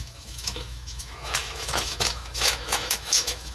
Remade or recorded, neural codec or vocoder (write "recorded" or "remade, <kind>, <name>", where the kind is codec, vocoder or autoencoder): remade, autoencoder, DAC-VAE